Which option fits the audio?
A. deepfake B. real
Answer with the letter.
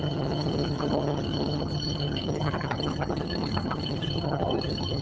A